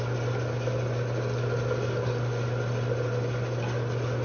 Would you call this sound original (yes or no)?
yes